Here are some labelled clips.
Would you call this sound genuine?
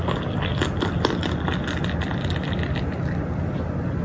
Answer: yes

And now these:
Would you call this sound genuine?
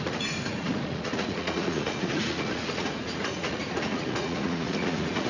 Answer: no